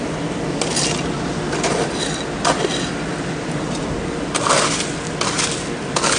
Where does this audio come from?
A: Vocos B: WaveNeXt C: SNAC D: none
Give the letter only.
D